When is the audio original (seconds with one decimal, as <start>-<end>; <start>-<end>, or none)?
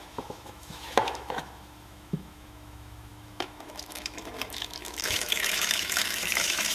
none